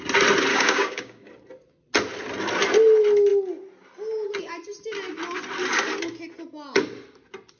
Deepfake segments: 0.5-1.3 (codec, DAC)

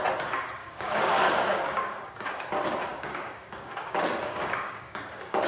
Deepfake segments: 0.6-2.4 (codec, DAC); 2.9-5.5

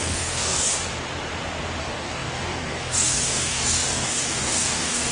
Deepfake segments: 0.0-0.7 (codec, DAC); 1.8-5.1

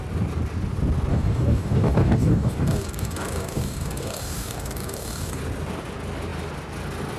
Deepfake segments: 1.1-5.4 (codec, DAC)

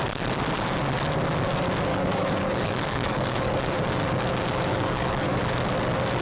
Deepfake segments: 1.9-3.6 (codec, DAC); 4.7-5.4

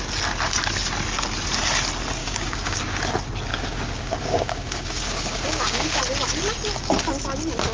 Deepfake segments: 2.2-3.0 (codec, DAC); 3.5-6.0

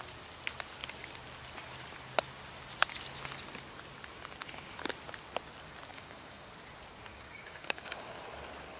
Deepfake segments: 5.9-6.5 (codec, DAC); 7.1-8.1